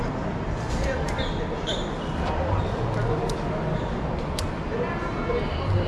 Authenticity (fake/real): real